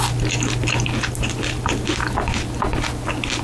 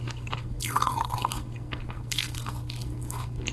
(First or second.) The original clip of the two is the first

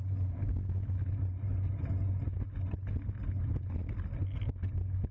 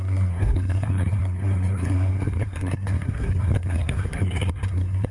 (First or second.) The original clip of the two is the first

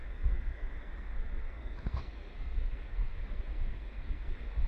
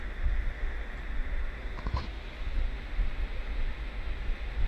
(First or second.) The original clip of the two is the second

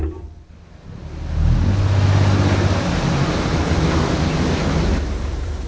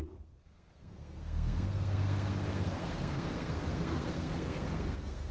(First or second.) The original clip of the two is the first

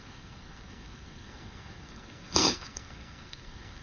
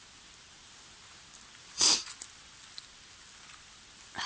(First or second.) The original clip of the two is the second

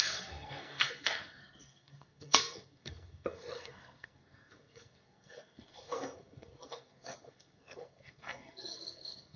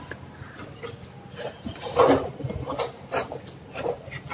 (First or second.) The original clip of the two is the second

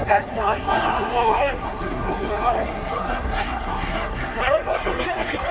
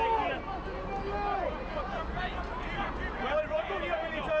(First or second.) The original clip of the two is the second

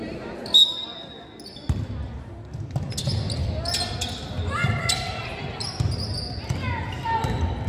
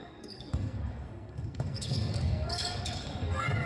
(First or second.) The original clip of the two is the first